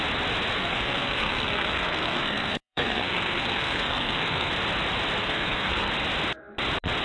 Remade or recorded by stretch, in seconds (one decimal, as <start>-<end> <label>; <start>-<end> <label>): 0.0-0.6 recorded; 0.6-4.5 remade; 4.5-5.2 recorded; 5.2-5.9 remade; 5.9-7.0 recorded